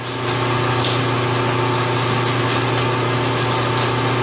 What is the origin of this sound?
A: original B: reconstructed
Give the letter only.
A